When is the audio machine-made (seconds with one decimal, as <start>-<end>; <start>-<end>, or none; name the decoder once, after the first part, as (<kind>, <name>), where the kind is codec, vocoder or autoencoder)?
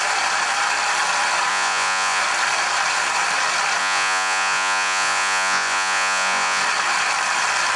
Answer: 1.5-2.2 (vocoder, Vocos); 3.8-6.6